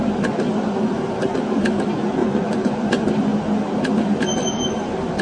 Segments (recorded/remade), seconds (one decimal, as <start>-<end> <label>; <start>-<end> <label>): 0.0-2.2 recorded; 2.2-2.9 remade; 2.9-5.2 recorded